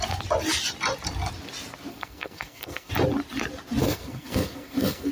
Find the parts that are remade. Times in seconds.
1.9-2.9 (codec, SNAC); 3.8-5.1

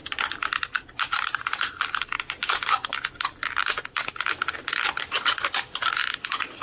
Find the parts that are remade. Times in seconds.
none